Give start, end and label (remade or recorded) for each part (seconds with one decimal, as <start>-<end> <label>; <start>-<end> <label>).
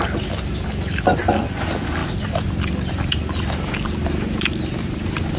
0.0-5.4 recorded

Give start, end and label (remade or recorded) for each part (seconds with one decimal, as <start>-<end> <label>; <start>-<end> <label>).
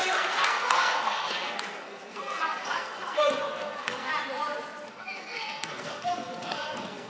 0.0-4.1 remade; 4.1-4.9 recorded; 4.9-7.1 remade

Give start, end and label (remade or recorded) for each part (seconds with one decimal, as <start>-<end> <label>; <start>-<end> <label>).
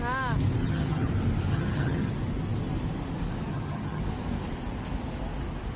0.0-0.6 recorded; 0.6-1.1 remade; 1.1-1.5 recorded; 1.5-2.1 remade; 2.1-3.5 recorded; 3.5-4.0 remade; 4.0-5.8 recorded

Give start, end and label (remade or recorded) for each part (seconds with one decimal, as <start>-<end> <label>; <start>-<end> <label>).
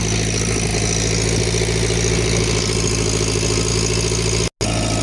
0.0-5.0 recorded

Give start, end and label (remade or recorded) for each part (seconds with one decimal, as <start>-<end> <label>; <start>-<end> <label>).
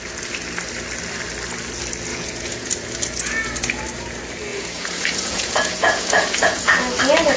0.0-2.1 recorded; 2.1-2.7 remade; 2.7-4.5 recorded; 4.5-6.6 remade; 6.6-7.4 recorded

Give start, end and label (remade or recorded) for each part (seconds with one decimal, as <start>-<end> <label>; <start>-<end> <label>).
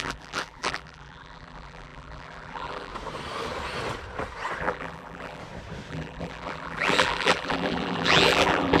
0.0-2.9 remade; 2.9-4.6 recorded; 4.6-5.4 remade; 5.4-5.9 recorded; 5.9-8.8 remade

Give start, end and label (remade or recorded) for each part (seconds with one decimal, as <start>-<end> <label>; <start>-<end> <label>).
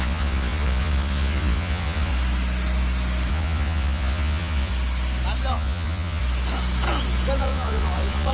0.0-2.1 remade; 2.1-3.3 recorded; 3.3-4.7 remade; 4.7-5.5 recorded; 5.5-6.2 remade; 6.2-7.4 recorded; 7.4-8.3 remade